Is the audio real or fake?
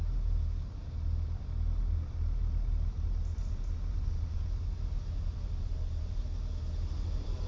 real